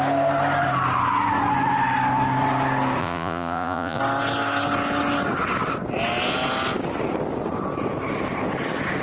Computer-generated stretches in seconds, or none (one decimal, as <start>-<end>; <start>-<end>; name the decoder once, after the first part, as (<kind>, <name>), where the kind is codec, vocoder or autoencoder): 3.0-4.0 (vocoder, Vocos)